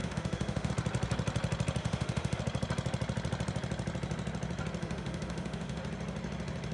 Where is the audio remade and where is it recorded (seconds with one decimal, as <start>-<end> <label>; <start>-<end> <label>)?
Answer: 0.0-0.7 remade; 0.7-1.8 recorded; 1.8-2.4 remade; 2.4-4.8 recorded; 4.8-5.8 remade; 5.8-6.7 recorded